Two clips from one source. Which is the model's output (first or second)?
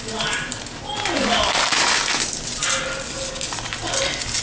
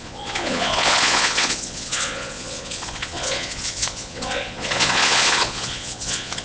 second